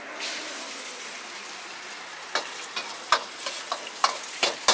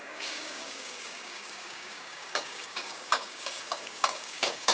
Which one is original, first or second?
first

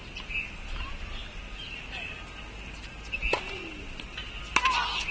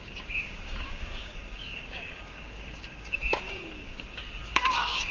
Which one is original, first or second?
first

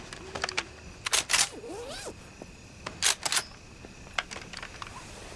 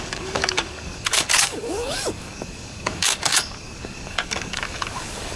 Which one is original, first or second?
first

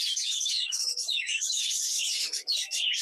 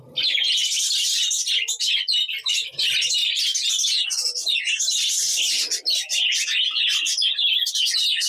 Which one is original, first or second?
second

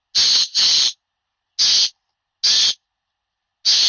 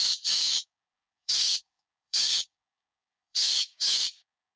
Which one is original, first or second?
first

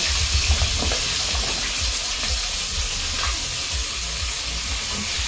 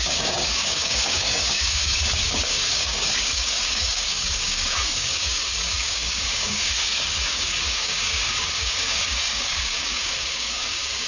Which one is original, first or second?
first